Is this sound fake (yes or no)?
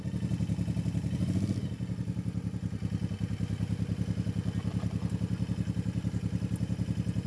no